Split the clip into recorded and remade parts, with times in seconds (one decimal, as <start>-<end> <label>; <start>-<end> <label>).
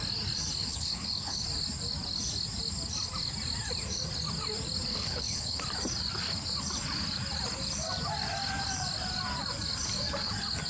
0.0-0.6 recorded; 0.6-1.4 remade; 1.4-4.9 recorded; 4.9-5.6 remade; 5.6-10.7 recorded